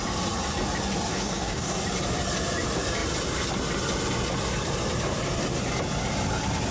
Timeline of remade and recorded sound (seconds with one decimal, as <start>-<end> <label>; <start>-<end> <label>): 0.0-1.1 recorded; 1.1-1.8 remade; 1.8-6.7 recorded